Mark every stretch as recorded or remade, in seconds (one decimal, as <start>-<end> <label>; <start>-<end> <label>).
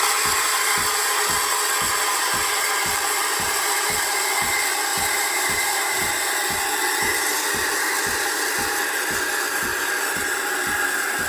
0.0-3.3 recorded; 3.3-3.9 remade; 3.9-4.9 recorded; 4.9-6.2 remade; 6.2-11.3 recorded